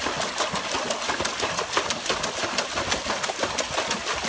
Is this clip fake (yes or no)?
no